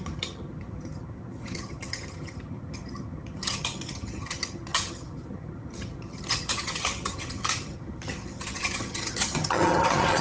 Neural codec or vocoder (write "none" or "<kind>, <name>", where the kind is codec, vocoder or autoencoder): vocoder, HiFi-GAN